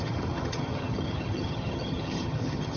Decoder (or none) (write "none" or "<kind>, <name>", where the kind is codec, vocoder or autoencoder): vocoder, HiFi-GAN